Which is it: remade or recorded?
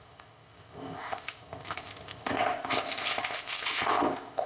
remade